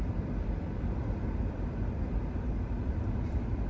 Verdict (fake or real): fake